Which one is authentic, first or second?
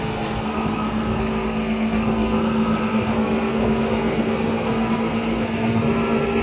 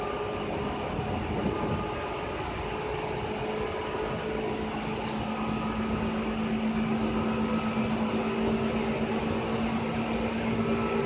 second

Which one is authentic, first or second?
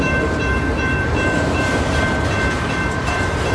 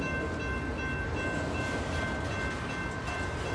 second